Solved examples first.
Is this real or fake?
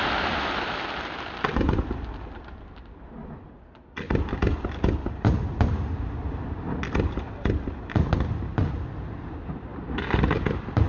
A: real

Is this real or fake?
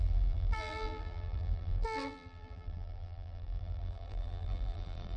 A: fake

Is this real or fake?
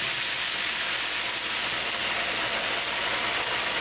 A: real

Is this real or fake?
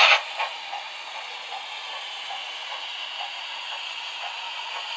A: fake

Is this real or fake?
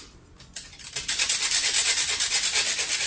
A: real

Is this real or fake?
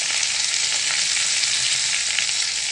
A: real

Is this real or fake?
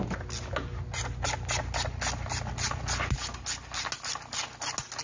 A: real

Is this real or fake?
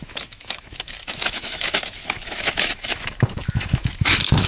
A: fake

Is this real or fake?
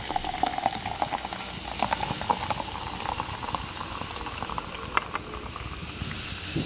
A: real